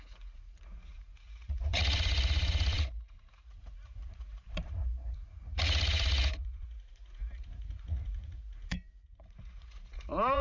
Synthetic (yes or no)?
yes